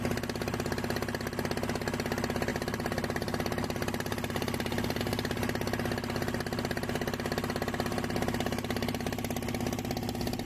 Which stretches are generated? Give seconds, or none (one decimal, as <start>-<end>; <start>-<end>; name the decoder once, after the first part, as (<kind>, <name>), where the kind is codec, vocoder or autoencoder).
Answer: 2.5-5.0 (vocoder, BigVGAN v2)